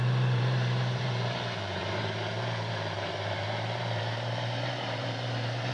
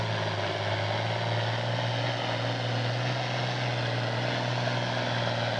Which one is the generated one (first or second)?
first